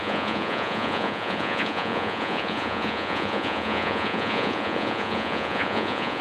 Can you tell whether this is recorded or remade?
remade